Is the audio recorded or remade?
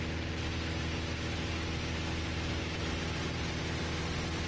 recorded